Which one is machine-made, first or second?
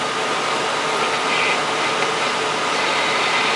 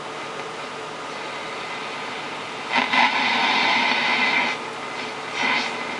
first